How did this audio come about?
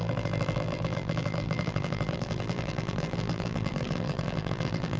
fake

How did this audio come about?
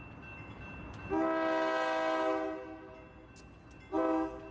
real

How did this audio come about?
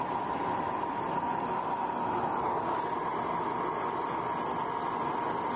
real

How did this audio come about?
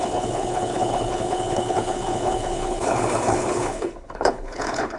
fake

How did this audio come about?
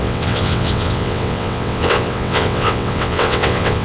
fake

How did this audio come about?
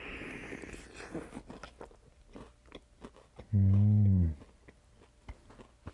real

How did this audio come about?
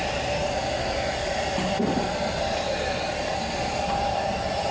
real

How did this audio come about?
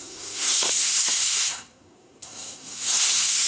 fake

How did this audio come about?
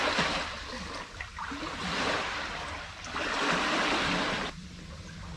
real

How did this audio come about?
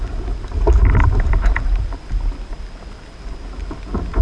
real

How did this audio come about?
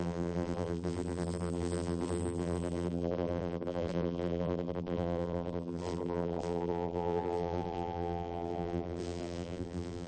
fake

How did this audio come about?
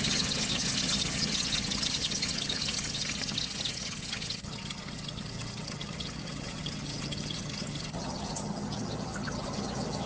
fake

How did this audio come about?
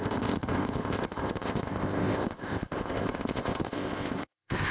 fake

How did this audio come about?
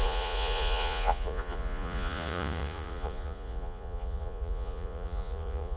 fake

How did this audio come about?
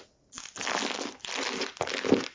real